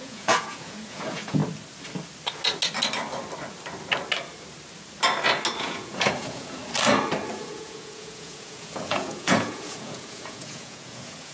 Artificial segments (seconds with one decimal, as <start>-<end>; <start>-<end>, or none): 0.0-1.4; 5.6-6.6; 7.3-11.3